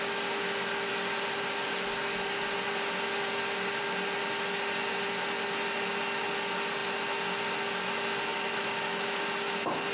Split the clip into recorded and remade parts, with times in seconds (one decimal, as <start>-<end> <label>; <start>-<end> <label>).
0.0-8.3 recorded; 8.3-9.2 remade; 9.2-9.9 recorded